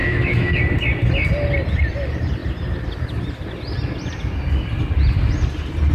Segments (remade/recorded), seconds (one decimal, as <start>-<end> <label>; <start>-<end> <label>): 0.0-0.6 remade; 0.6-5.9 recorded